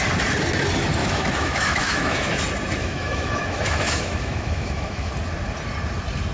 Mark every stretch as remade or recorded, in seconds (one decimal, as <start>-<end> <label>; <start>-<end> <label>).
0.0-1.0 recorded; 1.0-2.4 remade; 2.4-2.8 recorded; 2.8-5.1 remade; 5.1-6.3 recorded